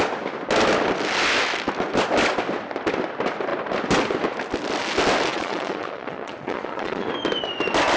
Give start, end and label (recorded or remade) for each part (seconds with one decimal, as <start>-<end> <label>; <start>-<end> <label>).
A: 0.0-5.3 recorded; 5.3-7.1 remade; 7.1-8.0 recorded

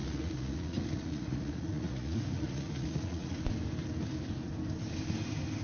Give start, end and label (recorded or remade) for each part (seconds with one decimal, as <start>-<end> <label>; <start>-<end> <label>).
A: 0.0-3.4 remade; 3.4-5.6 recorded

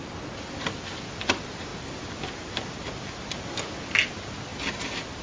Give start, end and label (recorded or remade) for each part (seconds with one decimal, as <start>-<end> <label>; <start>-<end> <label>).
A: 0.0-5.2 recorded

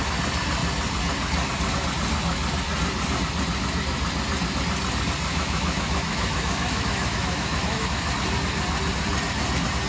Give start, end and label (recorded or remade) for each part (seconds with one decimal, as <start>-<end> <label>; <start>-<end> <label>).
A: 0.0-5.3 recorded; 5.3-8.1 remade; 8.1-9.9 recorded

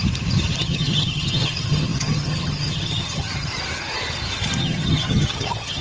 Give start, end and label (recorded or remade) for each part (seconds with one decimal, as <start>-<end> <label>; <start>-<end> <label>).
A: 0.0-0.6 recorded; 0.6-3.5 remade; 3.5-4.6 recorded; 4.6-5.8 remade